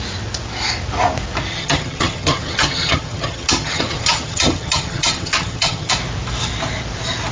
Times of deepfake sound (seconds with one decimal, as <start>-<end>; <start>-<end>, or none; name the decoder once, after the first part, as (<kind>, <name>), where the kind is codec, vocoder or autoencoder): 1.5-5.9 (vocoder, HiFi-GAN)